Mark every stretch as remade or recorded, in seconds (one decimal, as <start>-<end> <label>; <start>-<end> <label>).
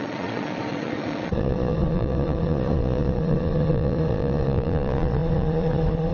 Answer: 0.0-6.1 remade